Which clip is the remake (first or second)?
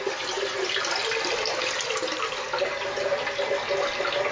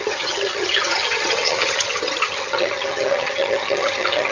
second